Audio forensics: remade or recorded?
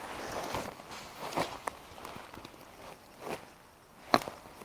recorded